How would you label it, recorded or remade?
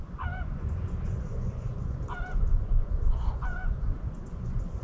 remade